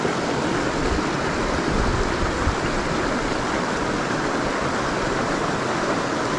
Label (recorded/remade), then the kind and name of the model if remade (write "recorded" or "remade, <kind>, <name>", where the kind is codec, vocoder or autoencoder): recorded